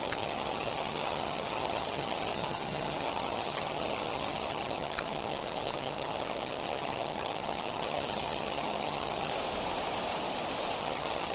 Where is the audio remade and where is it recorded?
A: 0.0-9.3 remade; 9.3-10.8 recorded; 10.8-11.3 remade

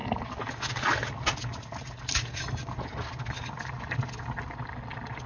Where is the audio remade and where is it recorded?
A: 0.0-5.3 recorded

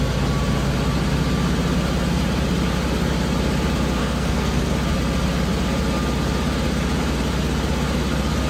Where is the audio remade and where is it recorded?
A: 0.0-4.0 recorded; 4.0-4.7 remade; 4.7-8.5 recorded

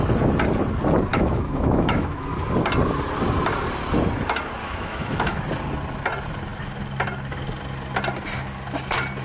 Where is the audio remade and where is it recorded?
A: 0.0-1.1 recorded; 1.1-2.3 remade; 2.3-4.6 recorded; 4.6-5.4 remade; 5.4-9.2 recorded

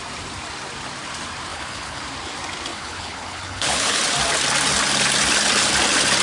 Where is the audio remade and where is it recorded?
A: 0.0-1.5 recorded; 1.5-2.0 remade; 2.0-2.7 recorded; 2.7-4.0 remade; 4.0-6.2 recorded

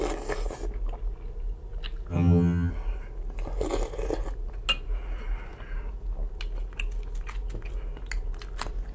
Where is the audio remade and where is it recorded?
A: 0.0-2.1 recorded; 2.1-2.7 remade; 2.7-8.9 recorded